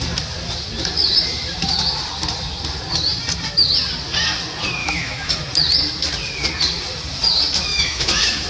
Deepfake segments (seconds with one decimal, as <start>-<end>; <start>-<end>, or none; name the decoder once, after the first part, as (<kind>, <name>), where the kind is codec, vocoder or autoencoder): 4.8-5.4 (autoencoder, DAC-VAE); 7.7-8.5